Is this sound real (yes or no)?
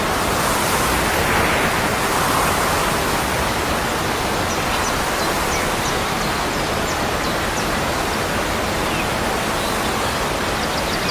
yes